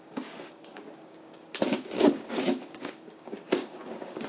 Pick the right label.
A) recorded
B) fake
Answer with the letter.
B